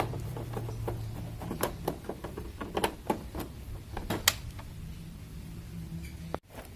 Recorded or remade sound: recorded